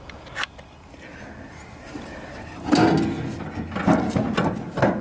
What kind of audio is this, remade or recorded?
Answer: recorded